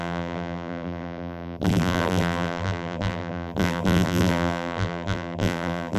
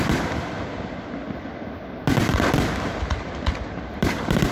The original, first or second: second